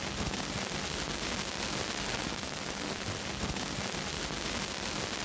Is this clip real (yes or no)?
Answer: yes